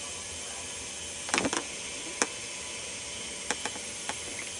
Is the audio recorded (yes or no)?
yes